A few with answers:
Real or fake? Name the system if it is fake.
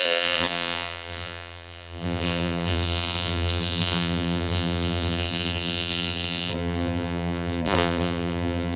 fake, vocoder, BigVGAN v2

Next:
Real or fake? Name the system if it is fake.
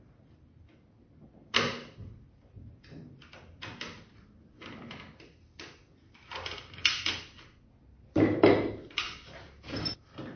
real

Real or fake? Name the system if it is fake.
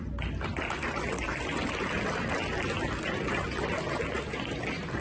real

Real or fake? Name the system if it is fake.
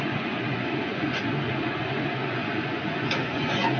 fake, vocoder, Vocos